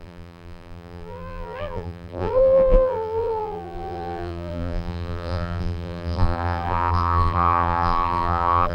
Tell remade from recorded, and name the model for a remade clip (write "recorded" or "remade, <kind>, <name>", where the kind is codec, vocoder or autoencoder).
remade, vocoder, BigVGAN v2